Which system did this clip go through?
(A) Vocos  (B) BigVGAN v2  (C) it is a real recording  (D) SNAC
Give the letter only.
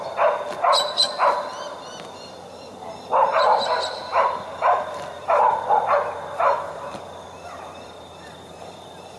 B